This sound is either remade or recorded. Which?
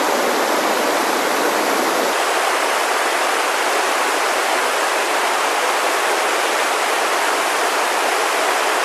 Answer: remade